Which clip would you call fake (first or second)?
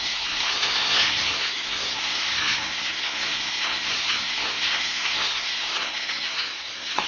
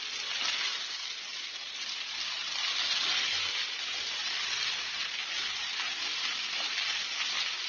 first